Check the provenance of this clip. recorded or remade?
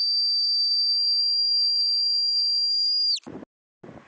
recorded